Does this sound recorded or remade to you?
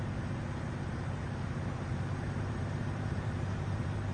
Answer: remade